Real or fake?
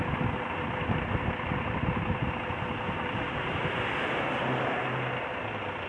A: real